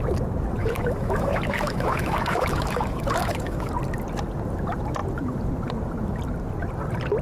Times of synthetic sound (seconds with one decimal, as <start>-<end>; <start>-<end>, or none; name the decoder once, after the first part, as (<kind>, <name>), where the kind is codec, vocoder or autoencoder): 0.6-3.7 (autoencoder, DAC-VAE)